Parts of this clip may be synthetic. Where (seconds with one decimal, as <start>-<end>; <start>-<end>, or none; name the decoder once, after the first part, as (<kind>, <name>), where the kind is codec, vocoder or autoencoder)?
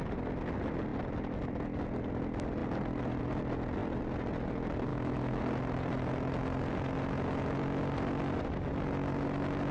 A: 4.9-5.4 (autoencoder, DAC-VAE)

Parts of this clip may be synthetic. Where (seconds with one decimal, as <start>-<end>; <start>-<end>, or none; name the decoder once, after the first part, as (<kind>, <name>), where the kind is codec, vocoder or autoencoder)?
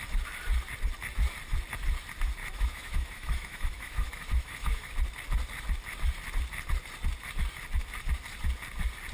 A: 2.4-4.9 (autoencoder, DAC-VAE)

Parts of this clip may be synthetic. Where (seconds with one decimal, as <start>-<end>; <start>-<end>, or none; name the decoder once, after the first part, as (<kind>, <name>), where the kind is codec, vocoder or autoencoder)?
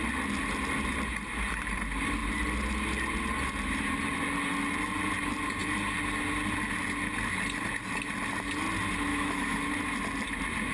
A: 9.1-9.7 (autoencoder, DAC-VAE)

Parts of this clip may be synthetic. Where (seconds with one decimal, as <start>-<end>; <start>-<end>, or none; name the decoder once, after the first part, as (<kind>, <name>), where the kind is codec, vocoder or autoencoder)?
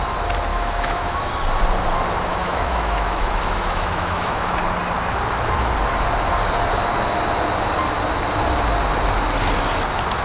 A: 0.5-1.3 (autoencoder, DAC-VAE); 2.3-4.6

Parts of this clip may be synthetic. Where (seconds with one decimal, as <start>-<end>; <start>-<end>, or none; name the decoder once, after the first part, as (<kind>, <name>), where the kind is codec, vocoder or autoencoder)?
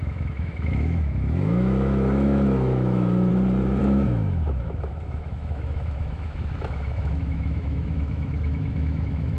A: 0.0-3.3 (autoencoder, DAC-VAE); 3.8-9.4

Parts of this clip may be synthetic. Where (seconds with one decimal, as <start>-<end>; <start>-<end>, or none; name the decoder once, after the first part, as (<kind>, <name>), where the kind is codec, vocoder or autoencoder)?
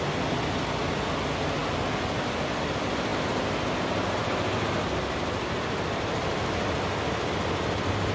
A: none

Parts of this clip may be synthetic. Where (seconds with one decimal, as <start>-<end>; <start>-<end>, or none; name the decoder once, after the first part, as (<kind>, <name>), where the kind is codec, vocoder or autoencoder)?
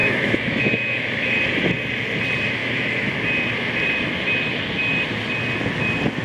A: 0.0-1.3 (autoencoder, DAC-VAE); 2.6-3.1